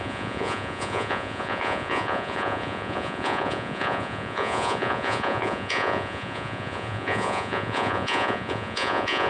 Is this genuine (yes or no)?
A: no